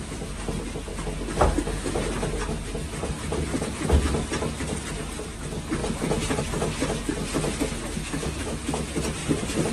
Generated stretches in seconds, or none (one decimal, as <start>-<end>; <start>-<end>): none